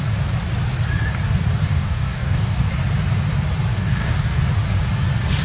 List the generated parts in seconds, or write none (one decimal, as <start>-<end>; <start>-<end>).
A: 1.6-2.7; 3.7-4.4